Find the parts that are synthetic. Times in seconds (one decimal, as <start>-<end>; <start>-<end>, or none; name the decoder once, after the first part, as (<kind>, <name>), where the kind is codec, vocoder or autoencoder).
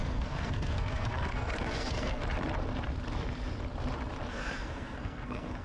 0.0-2.2 (codec, SNAC); 4.3-5.6